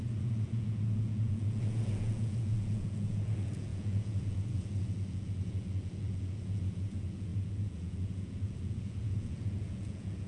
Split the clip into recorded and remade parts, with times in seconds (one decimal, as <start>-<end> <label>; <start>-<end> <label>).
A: 0.0-10.3 remade